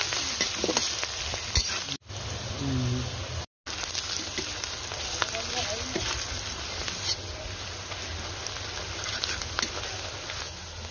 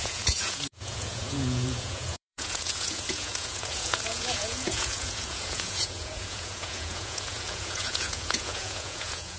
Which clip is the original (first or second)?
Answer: first